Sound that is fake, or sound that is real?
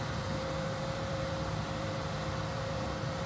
fake